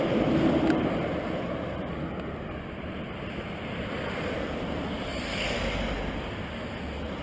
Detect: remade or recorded recorded